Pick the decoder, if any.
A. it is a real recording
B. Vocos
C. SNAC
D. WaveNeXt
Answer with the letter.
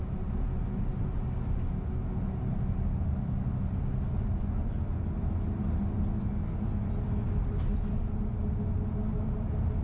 A